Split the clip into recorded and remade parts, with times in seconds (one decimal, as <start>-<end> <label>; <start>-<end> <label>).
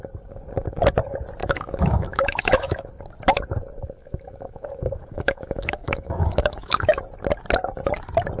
0.0-1.4 recorded; 1.4-2.9 remade; 2.9-4.0 recorded; 4.0-7.0 remade; 7.0-8.4 recorded